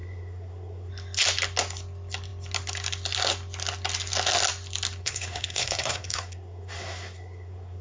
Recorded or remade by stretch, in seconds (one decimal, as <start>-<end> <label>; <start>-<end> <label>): 0.0-0.9 remade; 0.9-5.0 recorded; 5.0-7.8 remade